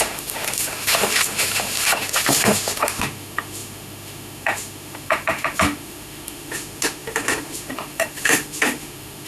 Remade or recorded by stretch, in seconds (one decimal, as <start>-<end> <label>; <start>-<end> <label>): 0.0-9.3 remade

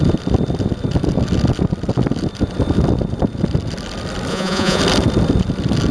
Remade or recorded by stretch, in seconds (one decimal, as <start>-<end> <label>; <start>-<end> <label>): 0.0-4.3 recorded; 4.3-4.8 remade; 4.8-5.9 recorded

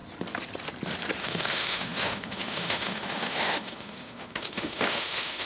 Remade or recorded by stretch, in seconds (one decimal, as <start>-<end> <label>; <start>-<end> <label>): 0.0-1.2 recorded; 1.2-5.5 remade

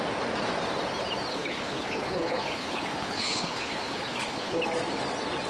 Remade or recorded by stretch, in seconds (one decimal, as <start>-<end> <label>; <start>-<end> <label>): 0.0-1.3 recorded; 1.3-4.6 remade; 4.6-5.5 recorded